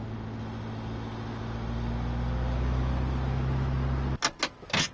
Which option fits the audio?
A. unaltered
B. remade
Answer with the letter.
A